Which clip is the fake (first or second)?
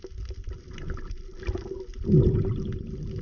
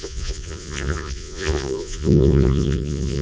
second